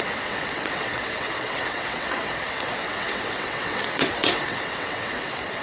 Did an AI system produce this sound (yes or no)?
yes